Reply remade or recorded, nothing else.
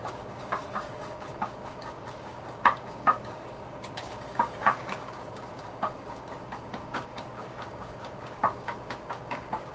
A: remade